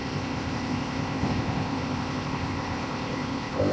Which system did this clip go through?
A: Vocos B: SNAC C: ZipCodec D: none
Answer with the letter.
C